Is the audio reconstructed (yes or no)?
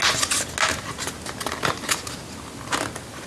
no